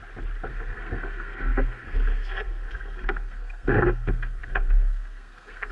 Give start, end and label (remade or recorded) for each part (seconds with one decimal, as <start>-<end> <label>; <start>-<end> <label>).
0.0-0.5 recorded; 0.5-5.7 remade